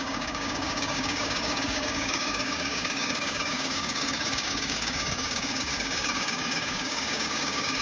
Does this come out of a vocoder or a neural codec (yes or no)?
yes